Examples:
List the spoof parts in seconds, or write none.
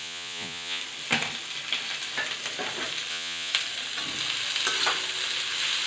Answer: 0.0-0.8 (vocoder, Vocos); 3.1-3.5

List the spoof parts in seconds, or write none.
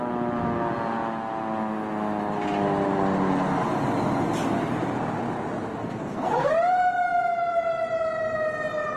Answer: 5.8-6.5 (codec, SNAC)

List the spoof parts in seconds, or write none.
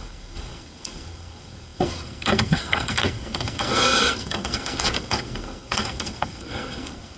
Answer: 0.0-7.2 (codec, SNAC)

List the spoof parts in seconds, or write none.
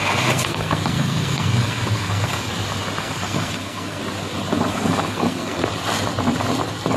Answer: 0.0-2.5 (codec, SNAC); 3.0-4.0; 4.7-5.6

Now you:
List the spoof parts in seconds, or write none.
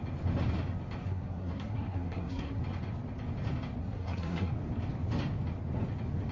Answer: 1.0-2.6 (codec, SNAC); 3.8-4.5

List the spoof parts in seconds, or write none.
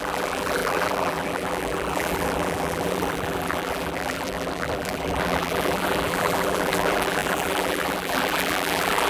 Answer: 0.0-9.1 (vocoder, BigVGAN v2)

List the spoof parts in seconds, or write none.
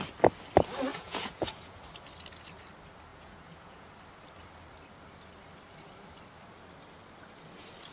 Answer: 0.9-1.8 (vocoder, Vocos); 3.1-3.9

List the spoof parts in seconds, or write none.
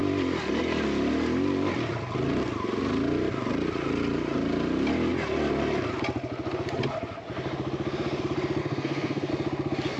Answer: 8.6-9.3 (codec, SNAC)